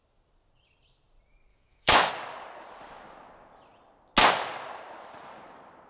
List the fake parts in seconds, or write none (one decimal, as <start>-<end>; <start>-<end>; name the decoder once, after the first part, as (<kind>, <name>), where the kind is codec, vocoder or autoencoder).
1.5-2.1 (autoencoder, DAC-VAE)